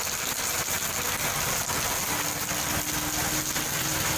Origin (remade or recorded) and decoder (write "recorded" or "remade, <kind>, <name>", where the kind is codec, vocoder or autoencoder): recorded